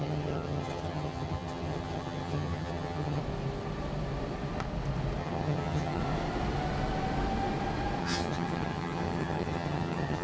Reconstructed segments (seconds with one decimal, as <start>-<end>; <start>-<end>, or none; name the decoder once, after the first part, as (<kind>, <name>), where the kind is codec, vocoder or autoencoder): 0.0-3.2 (vocoder, HiFi-GAN); 5.2-6.0; 8.0-10.2